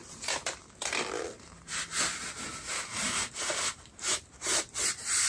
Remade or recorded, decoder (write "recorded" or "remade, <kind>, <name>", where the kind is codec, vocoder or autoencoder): remade, vocoder, BigVGAN v2